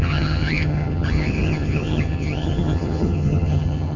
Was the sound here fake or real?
fake